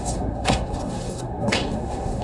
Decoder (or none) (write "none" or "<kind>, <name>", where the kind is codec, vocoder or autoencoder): codec, SNAC